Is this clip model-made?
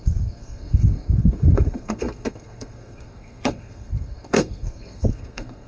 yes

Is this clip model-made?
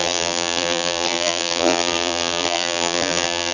yes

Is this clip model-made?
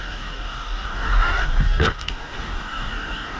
yes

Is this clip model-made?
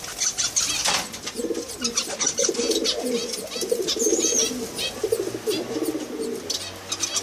no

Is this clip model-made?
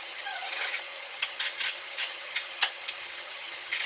yes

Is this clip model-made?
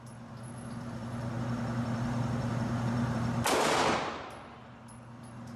no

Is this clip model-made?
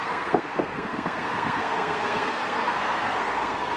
yes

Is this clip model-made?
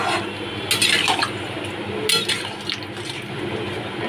no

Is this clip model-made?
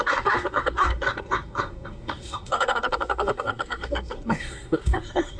yes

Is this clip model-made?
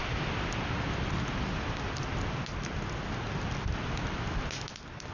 no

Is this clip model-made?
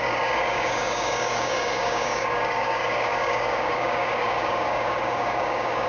yes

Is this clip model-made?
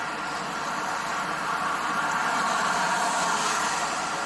no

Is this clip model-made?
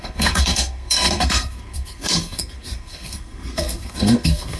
yes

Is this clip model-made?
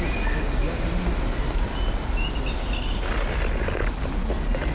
no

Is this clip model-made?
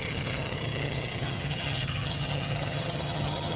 yes